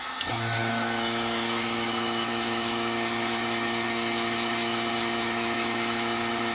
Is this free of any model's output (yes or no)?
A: no